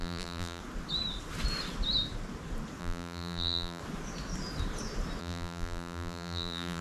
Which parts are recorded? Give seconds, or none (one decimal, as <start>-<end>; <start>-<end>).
0.6-2.8; 3.8-5.2